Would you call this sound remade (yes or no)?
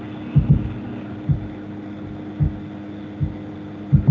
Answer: no